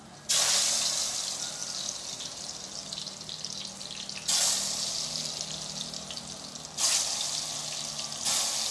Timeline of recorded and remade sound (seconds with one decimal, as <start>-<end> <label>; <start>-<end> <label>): 0.0-8.7 recorded